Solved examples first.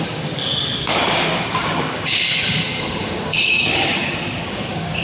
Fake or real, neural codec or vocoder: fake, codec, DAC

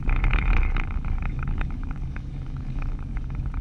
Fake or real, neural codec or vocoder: fake, codec, DAC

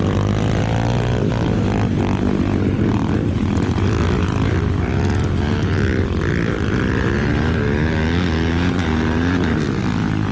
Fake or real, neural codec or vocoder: real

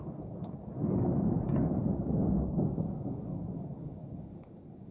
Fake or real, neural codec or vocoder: fake, codec, DAC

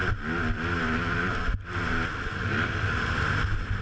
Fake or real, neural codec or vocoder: real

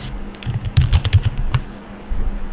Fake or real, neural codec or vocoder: fake, codec, DAC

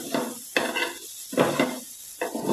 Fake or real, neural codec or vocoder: real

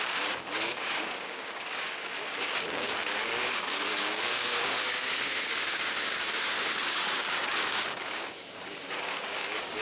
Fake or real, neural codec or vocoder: fake, codec, DAC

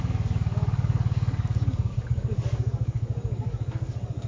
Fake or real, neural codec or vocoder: fake, codec, DAC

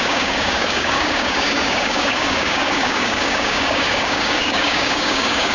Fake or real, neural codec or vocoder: fake, codec, DAC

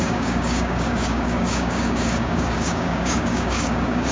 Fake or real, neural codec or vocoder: fake, codec, DAC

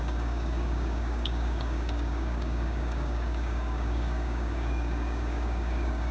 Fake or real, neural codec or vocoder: fake, codec, DAC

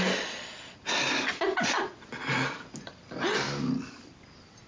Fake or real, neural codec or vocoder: real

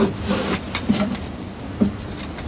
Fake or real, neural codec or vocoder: real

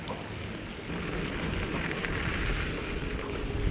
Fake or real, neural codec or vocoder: real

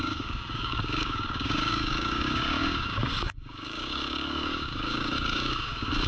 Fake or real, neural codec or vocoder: fake, codec, DAC